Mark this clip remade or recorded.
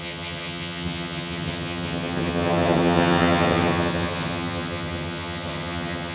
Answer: remade